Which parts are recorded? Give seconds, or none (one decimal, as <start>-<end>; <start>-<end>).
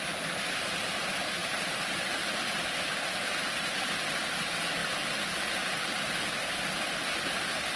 0.0-7.8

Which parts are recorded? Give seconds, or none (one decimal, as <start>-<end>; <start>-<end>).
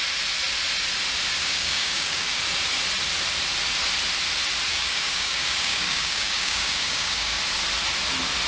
0.0-1.4; 2.4-4.7; 7.4-8.5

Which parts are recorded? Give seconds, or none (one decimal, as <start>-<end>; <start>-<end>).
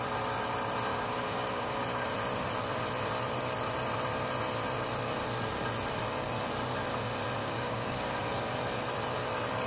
0.0-0.9; 1.8-7.4; 8.2-9.7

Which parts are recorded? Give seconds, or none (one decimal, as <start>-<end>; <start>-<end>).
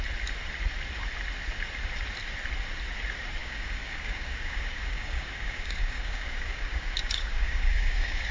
0.0-3.4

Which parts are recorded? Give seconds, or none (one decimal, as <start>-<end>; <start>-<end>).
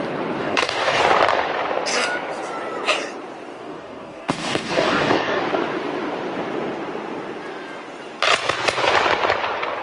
0.0-0.4; 1.0-3.6; 5.4-9.8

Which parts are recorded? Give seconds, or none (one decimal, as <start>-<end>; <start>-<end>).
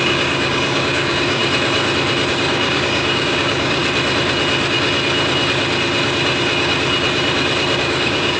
1.4-2.3; 3.8-7.8